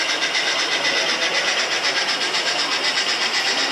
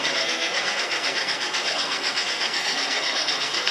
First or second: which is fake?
second